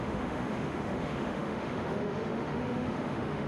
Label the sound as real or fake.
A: fake